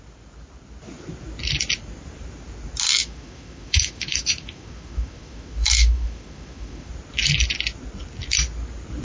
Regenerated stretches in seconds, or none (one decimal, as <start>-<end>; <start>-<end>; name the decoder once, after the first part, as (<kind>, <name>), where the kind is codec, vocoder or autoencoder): 3.0-6.9 (autoencoder, DAC-VAE)

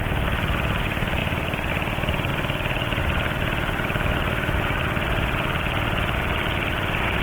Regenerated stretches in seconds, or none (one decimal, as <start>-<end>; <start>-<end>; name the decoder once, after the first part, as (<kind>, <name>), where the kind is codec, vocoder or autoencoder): 1.2-1.7 (vocoder, BigVGAN v2)

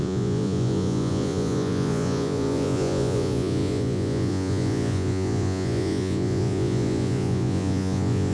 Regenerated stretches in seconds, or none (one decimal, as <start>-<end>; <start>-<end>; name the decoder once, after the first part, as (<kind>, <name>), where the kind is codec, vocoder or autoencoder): 0.0-8.3 (vocoder, Vocos)